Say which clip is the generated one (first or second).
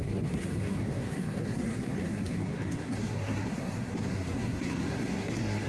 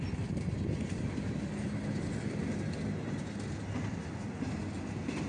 first